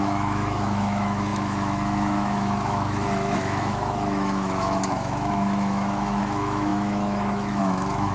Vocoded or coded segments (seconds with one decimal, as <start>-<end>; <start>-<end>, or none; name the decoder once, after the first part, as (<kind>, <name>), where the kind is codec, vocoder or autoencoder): 0.0-8.1 (autoencoder, DAC-VAE)